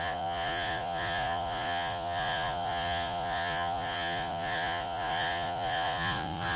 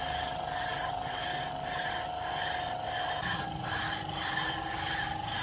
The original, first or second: second